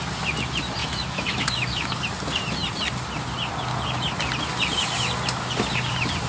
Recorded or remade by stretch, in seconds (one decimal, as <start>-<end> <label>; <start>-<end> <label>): 0.0-0.8 recorded; 0.8-1.9 remade; 1.9-6.3 recorded